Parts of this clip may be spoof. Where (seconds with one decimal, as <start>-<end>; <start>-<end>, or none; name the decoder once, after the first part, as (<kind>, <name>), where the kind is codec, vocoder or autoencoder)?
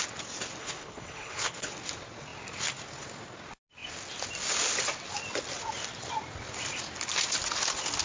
0.6-1.7 (codec, HILCodec)